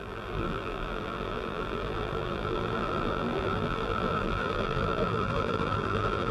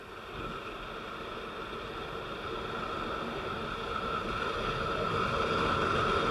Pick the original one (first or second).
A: second